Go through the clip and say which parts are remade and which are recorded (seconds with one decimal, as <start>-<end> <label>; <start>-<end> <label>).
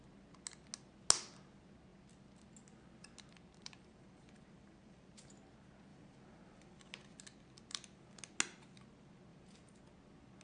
0.0-3.6 recorded; 3.6-5.3 remade; 5.3-5.9 recorded; 5.9-7.2 remade; 7.2-9.3 recorded; 9.3-9.8 remade; 9.8-10.4 recorded